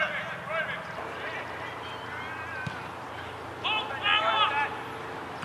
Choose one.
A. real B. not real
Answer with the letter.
A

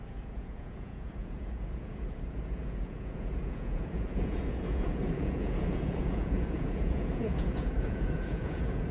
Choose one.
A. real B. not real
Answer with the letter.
B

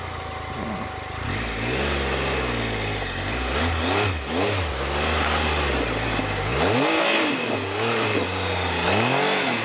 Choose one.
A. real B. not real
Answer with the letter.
A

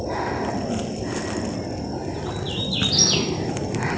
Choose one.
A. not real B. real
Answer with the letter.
B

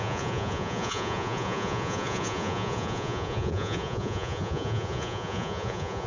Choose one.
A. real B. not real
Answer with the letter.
B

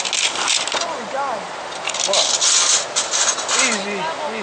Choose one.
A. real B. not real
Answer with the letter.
A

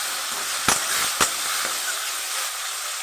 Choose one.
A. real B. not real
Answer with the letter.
A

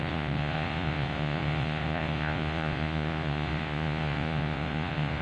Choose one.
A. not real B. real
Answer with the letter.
A